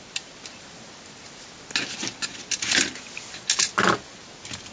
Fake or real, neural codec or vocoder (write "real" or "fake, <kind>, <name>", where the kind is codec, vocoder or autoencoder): real